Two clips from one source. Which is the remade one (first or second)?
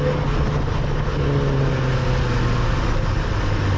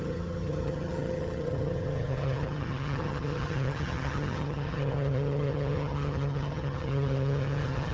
second